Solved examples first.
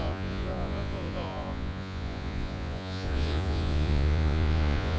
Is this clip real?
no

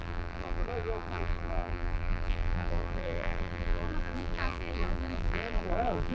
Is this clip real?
no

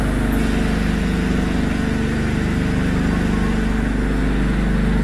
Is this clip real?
yes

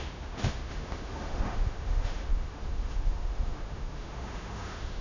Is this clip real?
no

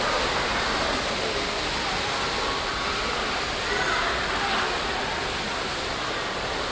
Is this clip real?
yes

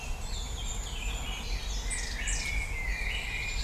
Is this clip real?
yes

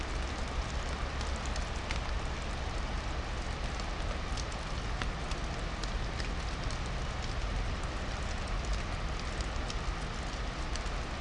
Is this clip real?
yes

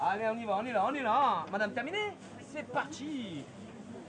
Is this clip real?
yes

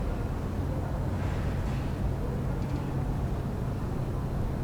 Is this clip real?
yes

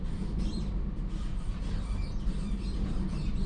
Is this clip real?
yes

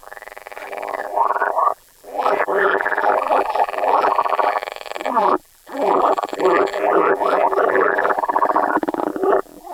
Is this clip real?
no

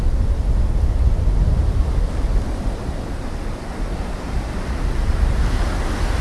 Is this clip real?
yes